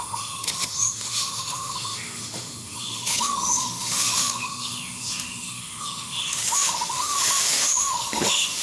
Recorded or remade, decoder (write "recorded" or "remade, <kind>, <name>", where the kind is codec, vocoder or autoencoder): remade, autoencoder, DAC-VAE